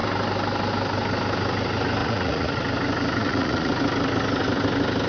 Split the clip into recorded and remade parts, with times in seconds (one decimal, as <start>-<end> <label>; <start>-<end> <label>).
0.0-2.0 recorded; 2.0-2.6 remade; 2.6-3.2 recorded; 3.2-3.7 remade; 3.7-5.1 recorded